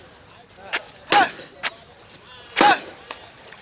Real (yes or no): yes